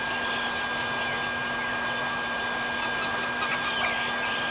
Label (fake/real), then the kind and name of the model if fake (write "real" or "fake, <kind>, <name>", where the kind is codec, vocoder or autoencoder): real